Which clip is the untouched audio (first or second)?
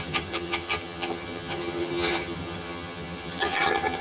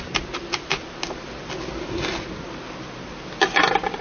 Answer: second